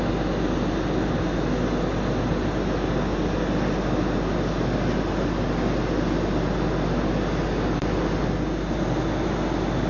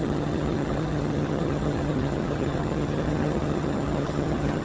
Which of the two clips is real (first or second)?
first